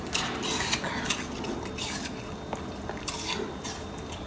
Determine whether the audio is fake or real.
real